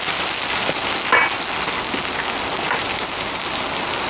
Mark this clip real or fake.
real